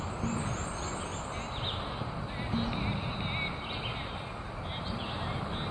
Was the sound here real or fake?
real